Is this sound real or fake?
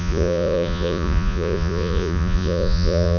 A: fake